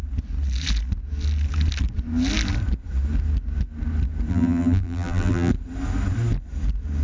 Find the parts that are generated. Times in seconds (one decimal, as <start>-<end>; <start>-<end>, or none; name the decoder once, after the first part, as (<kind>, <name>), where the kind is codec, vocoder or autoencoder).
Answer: 4.3-5.5 (vocoder, BigVGAN v2)